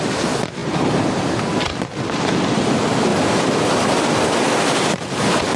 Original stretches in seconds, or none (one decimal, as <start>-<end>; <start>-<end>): 0.0-5.6